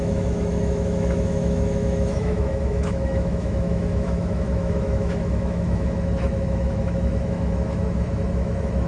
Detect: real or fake fake